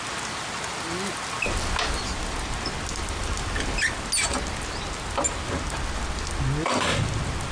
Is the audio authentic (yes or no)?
yes